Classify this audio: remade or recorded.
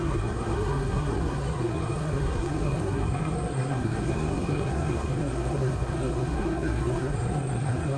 remade